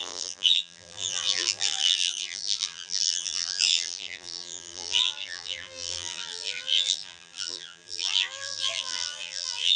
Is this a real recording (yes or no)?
no